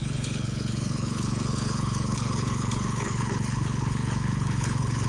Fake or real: fake